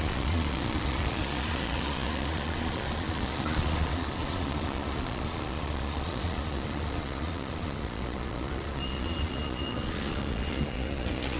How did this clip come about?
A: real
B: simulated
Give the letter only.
B